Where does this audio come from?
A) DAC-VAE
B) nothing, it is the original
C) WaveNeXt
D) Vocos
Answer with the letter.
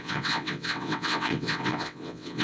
C